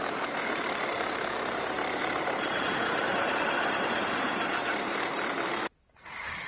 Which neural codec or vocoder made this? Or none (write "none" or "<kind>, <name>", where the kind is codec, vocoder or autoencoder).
vocoder, BigVGAN v2